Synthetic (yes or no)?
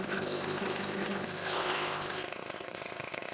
yes